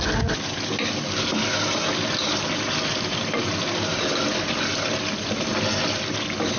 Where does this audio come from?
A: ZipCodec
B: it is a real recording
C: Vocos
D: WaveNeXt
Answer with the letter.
B